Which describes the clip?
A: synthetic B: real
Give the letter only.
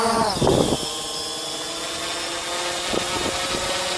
B